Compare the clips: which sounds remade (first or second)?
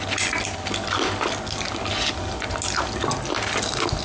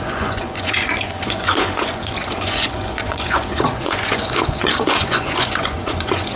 second